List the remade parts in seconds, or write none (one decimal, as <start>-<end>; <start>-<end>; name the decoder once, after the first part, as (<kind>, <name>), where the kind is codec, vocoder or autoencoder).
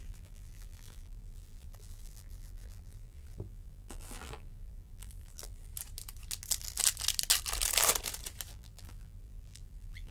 0.0-5.7 (vocoder, BigVGAN v2); 8.5-10.1